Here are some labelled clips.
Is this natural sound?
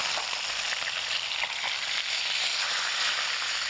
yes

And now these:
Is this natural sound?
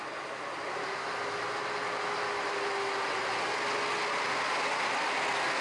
yes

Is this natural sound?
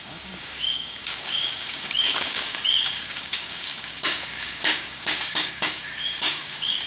no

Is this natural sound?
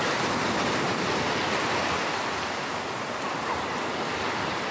yes